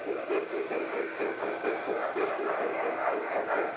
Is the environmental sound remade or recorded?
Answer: remade